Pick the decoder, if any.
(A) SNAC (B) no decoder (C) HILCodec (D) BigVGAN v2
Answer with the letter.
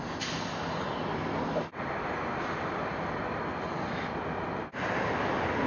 B